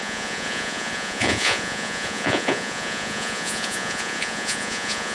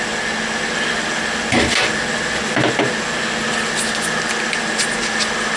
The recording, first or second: second